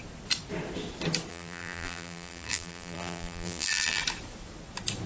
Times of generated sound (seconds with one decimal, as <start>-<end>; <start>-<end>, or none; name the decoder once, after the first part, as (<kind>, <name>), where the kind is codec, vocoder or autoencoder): 1.3-4.0 (vocoder, BigVGAN v2)